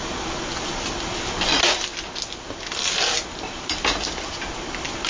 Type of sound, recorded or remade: recorded